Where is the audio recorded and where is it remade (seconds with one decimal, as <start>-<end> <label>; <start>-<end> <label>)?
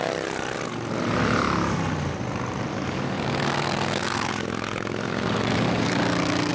0.0-2.7 recorded; 2.7-6.5 remade